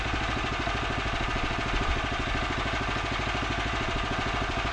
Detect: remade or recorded recorded